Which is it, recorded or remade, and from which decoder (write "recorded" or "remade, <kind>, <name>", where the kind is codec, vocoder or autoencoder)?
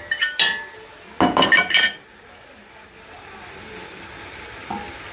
recorded